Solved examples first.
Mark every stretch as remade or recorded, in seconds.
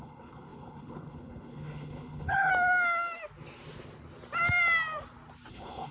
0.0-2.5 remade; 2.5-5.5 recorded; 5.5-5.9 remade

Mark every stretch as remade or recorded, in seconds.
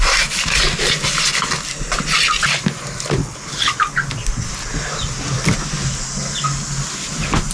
0.0-3.2 recorded; 3.2-3.7 remade; 3.7-7.5 recorded